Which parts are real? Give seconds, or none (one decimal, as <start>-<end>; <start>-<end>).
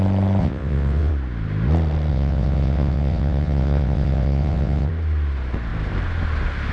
0.0-0.4; 1.1-2.1; 4.9-6.7